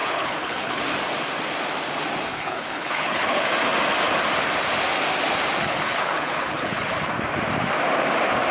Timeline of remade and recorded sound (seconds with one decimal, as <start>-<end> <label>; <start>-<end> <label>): 0.0-0.8 remade; 0.8-2.3 recorded; 2.3-3.4 remade; 3.4-5.6 recorded; 5.6-6.9 remade; 6.9-8.5 recorded